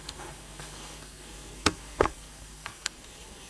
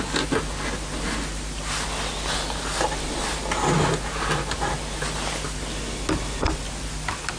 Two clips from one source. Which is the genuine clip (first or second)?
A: second